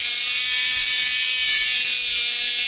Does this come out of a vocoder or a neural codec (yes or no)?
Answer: yes